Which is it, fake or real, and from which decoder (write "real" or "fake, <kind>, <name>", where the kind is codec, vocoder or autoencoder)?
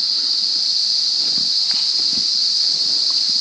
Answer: real